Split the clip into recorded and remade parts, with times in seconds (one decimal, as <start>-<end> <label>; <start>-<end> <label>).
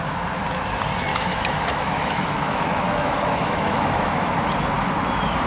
0.0-1.1 recorded; 1.1-4.4 remade; 4.4-5.5 recorded